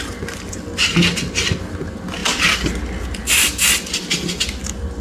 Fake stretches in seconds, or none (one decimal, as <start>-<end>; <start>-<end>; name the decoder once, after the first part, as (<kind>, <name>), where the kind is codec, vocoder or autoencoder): none